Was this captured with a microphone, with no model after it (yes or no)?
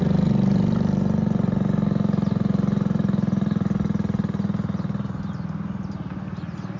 yes